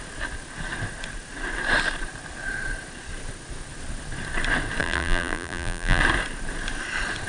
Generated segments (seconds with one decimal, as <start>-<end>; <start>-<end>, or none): 4.8-6.0